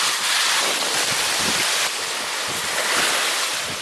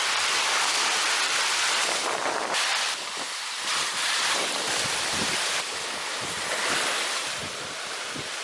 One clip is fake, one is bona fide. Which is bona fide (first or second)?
first